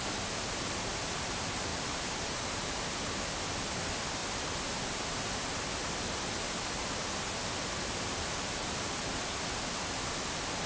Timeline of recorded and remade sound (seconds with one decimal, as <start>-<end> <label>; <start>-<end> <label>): 0.0-1.7 recorded; 1.7-2.8 remade; 2.8-8.1 recorded; 8.1-9.0 remade; 9.0-10.7 recorded